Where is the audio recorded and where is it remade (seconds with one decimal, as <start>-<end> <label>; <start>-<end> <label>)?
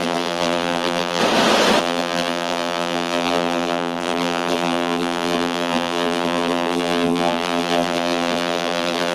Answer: 0.0-1.2 remade; 1.2-1.8 recorded; 1.8-9.1 remade